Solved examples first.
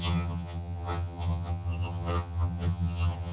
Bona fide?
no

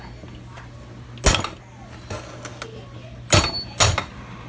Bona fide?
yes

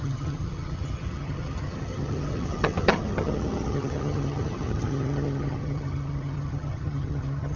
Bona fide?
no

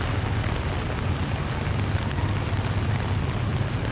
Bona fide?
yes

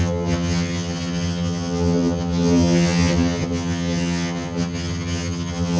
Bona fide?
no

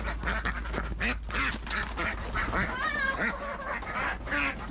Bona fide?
yes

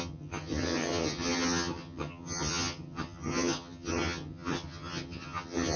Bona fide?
no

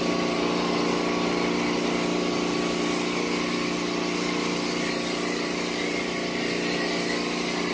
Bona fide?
yes